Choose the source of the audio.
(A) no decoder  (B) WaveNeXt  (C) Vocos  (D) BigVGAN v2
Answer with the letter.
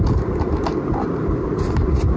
A